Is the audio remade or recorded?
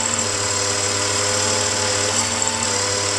recorded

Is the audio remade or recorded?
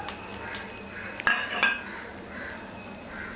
recorded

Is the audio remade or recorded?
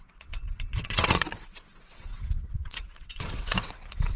remade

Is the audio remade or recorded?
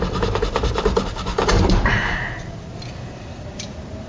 remade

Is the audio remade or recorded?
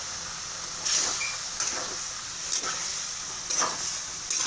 recorded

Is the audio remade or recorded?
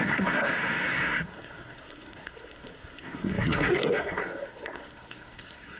remade